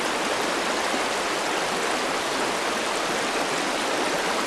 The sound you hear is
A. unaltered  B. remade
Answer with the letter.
A